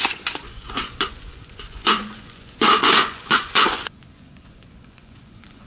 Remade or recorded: remade